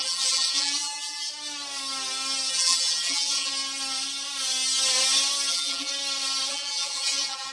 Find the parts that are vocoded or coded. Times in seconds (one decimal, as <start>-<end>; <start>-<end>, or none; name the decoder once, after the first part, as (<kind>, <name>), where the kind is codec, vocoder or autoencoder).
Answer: 0.0-1.3 (vocoder, BigVGAN v2); 2.5-3.5; 5.5-5.9; 6.5-7.5